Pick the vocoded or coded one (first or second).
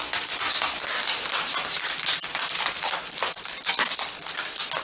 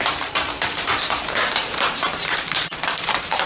second